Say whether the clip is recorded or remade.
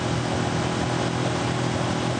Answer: recorded